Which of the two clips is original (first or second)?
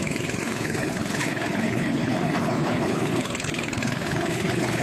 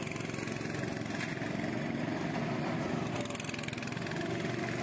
second